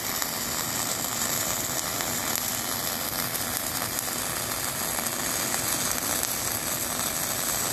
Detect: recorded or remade recorded